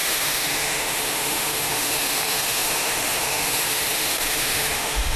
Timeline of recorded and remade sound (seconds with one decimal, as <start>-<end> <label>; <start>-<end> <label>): 0.0-5.2 remade